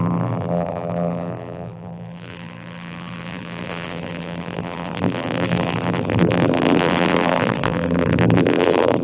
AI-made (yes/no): yes